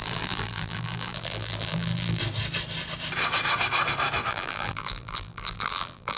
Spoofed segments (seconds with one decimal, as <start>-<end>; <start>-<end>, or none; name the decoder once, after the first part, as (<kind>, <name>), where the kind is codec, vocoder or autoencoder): 0.0-2.2 (vocoder, BigVGAN v2); 4.3-6.2